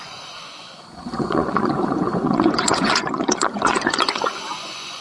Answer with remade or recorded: remade